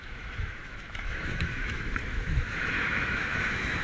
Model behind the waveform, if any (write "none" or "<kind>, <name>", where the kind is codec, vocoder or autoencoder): autoencoder, DAC-VAE